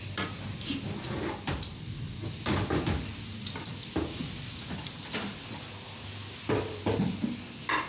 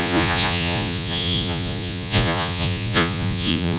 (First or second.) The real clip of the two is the first